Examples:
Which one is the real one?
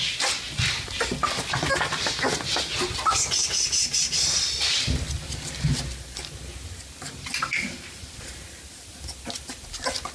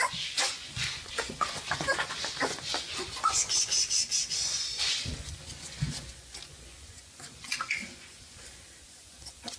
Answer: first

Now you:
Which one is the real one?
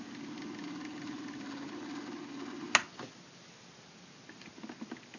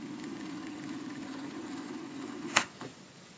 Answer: first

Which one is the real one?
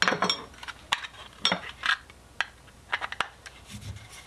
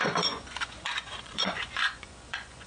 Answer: first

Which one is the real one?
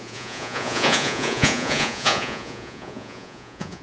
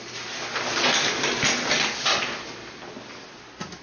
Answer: second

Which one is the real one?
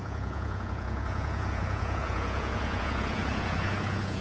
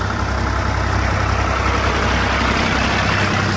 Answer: second